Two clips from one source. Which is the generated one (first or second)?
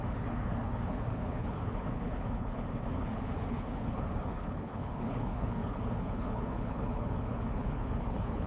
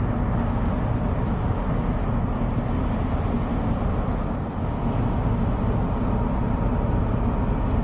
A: first